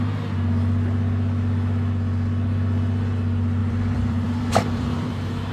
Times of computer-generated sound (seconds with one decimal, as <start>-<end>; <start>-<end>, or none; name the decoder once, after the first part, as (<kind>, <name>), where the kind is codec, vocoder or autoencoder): 3.6-5.5 (vocoder, BigVGAN v2)